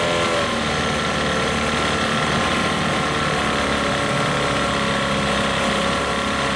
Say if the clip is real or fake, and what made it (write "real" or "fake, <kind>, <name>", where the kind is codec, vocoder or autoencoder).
real